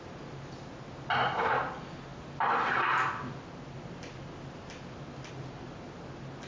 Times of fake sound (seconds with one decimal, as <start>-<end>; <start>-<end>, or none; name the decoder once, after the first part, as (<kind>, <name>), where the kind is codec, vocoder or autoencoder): none